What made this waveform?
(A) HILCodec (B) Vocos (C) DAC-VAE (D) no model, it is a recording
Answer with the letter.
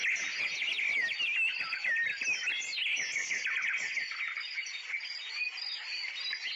D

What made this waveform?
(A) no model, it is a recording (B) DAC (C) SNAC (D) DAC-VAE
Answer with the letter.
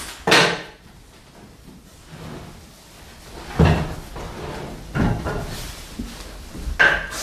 A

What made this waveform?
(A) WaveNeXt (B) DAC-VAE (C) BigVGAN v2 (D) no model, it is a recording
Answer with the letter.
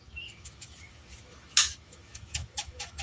B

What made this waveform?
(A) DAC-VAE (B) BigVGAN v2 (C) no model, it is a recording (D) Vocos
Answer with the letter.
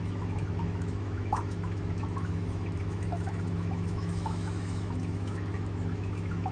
A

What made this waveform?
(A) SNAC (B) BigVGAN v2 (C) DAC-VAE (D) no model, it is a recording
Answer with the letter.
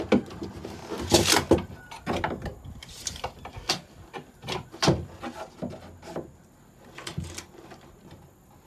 D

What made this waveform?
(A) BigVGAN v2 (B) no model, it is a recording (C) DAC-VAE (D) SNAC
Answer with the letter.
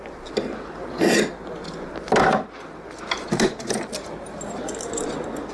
B